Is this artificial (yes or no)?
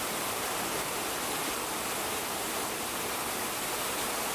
no